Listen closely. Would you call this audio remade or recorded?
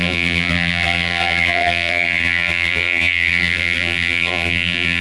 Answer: remade